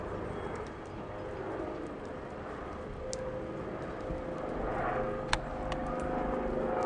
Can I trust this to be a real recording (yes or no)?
yes